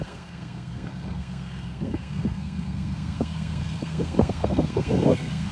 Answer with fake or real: fake